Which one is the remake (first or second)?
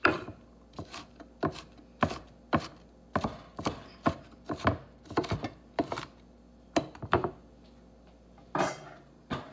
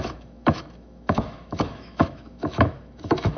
second